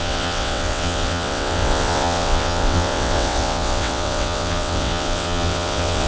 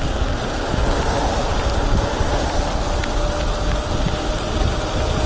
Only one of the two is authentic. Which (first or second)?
second